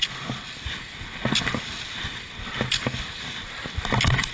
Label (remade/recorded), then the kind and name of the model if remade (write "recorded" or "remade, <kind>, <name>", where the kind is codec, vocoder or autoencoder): recorded